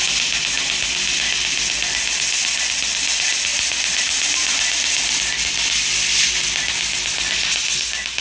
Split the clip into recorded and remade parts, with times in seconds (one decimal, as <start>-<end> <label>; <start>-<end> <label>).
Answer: 0.0-8.2 recorded